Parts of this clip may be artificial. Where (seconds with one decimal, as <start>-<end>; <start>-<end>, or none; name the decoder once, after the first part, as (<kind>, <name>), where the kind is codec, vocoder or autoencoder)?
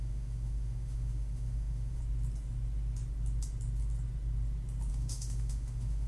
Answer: 0.0-2.0 (autoencoder, DAC-VAE); 4.9-6.1